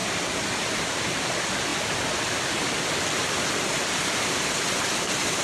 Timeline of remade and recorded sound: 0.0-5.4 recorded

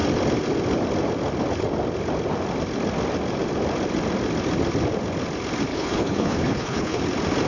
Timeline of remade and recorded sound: 0.0-5.7 recorded; 5.7-7.0 remade; 7.0-7.5 recorded